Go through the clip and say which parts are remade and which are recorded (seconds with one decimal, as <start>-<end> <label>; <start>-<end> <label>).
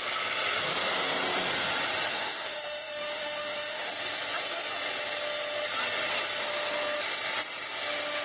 0.0-2.1 recorded; 2.1-3.9 remade; 3.9-8.2 recorded